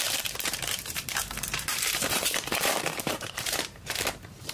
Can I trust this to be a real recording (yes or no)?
no